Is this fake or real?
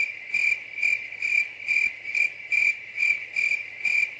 real